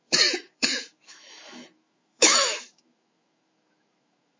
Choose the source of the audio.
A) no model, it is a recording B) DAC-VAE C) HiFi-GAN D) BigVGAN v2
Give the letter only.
B